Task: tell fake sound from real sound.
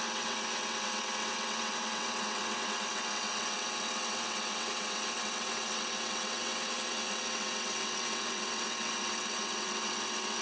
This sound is fake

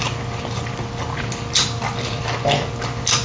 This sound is real